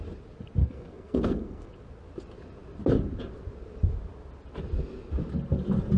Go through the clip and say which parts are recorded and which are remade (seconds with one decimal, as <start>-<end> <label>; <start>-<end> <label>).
0.0-0.6 recorded; 0.6-1.7 remade; 1.7-6.0 recorded